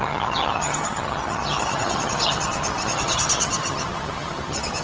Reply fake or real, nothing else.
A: fake